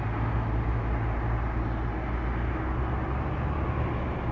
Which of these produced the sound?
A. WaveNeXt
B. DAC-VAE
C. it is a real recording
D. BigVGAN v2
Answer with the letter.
C